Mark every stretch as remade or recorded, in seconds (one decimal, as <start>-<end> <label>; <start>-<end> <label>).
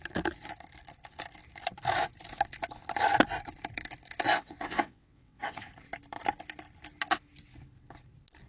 0.0-4.3 recorded; 4.3-5.7 remade; 5.7-8.5 recorded